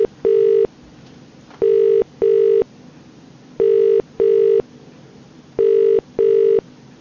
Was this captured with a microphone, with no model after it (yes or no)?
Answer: yes